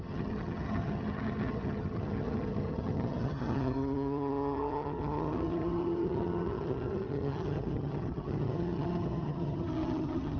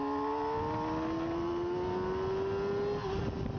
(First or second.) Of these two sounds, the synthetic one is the first